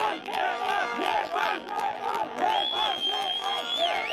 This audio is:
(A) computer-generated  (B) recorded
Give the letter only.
A